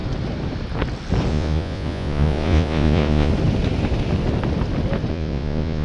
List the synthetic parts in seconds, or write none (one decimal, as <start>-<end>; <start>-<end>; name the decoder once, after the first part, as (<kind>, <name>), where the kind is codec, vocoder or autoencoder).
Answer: 1.3-3.3 (vocoder, Vocos); 5.1-5.8